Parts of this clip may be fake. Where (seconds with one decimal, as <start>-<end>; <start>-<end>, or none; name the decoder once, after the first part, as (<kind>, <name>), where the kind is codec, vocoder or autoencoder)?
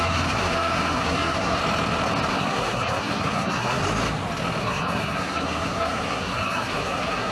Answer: 0.0-1.6 (codec, SNAC); 2.3-3.8; 4.6-7.3